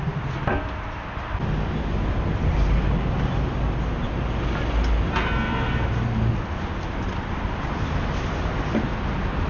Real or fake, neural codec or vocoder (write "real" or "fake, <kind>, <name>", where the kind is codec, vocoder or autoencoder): real